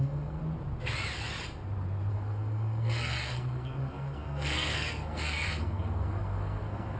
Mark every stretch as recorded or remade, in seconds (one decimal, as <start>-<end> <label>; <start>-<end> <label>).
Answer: 0.0-0.4 remade; 0.4-2.1 recorded; 2.1-7.0 remade